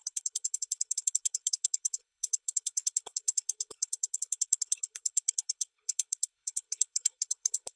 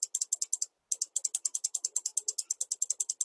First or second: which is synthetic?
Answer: first